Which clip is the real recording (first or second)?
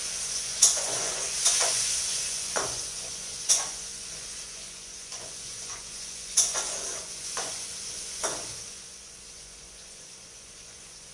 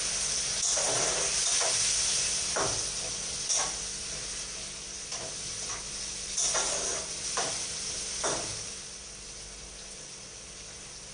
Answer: second